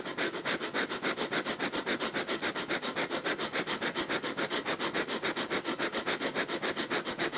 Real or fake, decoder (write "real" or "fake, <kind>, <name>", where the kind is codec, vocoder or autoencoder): real